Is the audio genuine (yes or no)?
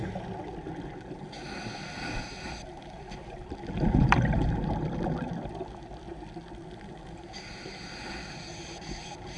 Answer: yes